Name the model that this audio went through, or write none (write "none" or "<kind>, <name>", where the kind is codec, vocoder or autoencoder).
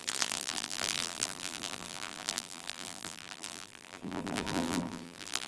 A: vocoder, BigVGAN v2